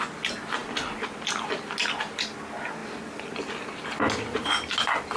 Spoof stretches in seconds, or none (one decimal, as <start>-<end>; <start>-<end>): none